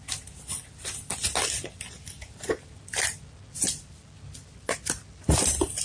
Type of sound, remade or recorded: recorded